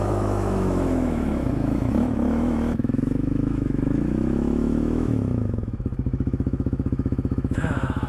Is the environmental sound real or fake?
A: fake